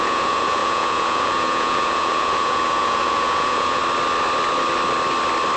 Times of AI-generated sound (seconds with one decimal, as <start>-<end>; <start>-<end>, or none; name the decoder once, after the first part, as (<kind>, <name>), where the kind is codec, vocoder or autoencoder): 0.0-3.8 (vocoder, Vocos)